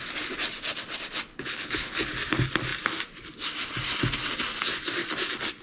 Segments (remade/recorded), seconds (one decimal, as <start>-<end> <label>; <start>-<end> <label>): 0.0-1.3 recorded; 1.3-2.1 remade; 2.1-5.6 recorded